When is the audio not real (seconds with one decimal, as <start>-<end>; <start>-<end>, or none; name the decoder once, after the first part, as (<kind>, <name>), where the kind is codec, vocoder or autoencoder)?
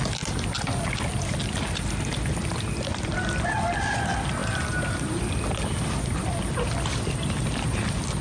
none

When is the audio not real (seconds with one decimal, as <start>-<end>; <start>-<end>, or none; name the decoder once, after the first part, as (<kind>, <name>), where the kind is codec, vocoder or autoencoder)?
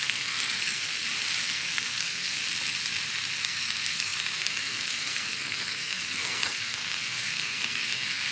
0.0-0.9 (codec, SNAC); 1.4-2.4; 3.4-8.3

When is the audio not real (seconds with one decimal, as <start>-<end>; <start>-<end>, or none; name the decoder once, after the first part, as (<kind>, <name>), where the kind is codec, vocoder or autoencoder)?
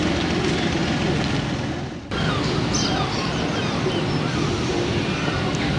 none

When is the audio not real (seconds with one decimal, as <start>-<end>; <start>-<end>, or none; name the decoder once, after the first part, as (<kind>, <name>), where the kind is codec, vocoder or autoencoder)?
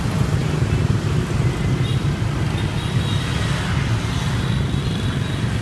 none